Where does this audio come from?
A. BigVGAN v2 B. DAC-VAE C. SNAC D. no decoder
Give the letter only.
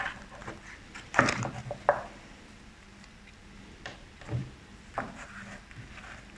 D